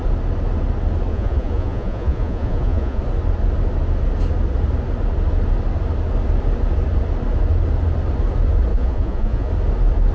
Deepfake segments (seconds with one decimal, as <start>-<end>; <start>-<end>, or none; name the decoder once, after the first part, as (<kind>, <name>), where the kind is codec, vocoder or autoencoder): 1.1-3.0 (vocoder, Vocos); 8.7-9.5